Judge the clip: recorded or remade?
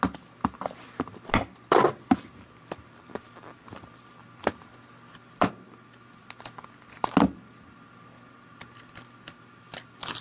recorded